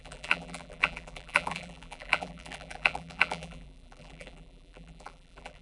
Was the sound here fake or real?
fake